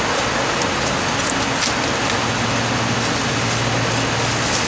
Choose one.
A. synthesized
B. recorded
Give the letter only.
B